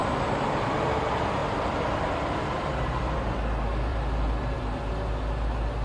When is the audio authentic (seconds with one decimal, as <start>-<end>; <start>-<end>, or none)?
1.0-1.4; 2.7-3.9; 4.6-5.8